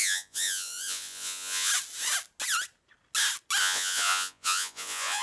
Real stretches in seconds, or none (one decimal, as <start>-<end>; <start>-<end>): 1.7-3.6

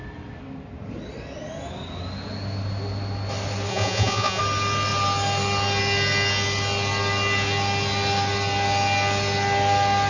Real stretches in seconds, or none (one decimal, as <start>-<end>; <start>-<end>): 0.0-3.7; 4.4-10.1

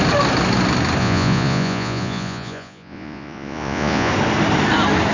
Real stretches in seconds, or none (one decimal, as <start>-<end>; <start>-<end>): 0.0-1.0; 4.1-5.1